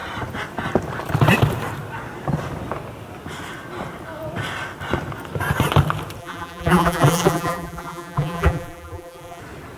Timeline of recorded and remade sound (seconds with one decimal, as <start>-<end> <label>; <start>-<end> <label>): 0.0-6.2 recorded; 6.2-9.4 remade; 9.4-9.8 recorded